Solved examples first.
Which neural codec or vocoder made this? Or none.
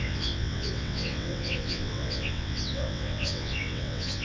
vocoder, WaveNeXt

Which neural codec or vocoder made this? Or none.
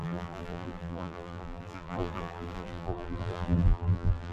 vocoder, BigVGAN v2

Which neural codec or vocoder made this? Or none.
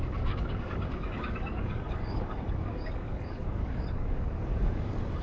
codec, DAC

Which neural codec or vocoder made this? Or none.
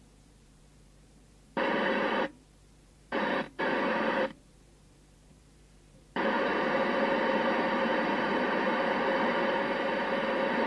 vocoder, BigVGAN v2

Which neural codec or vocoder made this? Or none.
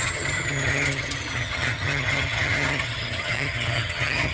vocoder, HiFi-GAN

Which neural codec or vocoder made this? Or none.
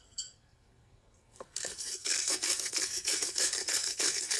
codec, SNAC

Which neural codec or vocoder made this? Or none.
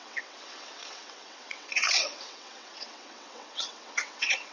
vocoder, WaveNeXt